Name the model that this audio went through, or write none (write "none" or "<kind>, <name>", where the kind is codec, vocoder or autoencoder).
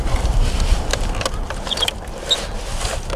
none